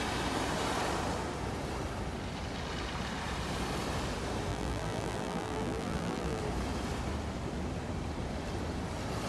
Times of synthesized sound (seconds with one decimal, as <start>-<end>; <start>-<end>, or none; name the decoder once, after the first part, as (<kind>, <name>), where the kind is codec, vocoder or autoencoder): 4.5-6.4 (vocoder, BigVGAN v2)